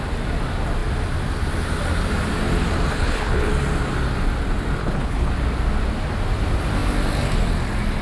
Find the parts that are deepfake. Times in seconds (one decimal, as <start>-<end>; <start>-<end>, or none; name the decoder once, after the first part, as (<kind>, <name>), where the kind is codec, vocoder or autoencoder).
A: 2.9-3.5 (codec, HILCodec); 4.8-5.3